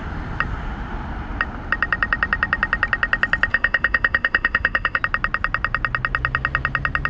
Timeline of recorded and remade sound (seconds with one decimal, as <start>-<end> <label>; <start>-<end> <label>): 0.0-3.5 recorded; 3.5-5.0 remade; 5.0-7.1 recorded